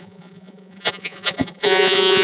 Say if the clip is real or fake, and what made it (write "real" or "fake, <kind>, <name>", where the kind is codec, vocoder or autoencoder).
fake, vocoder, Vocos